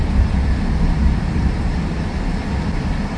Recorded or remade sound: recorded